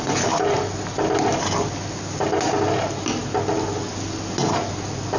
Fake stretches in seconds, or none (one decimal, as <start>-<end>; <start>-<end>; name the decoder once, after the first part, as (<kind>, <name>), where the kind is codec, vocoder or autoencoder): none